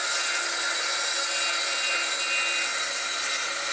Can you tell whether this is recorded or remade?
recorded